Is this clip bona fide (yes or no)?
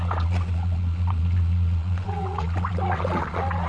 no